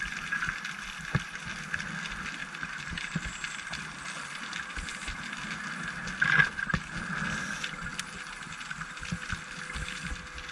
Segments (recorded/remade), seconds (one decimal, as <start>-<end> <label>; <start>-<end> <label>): 0.0-10.5 recorded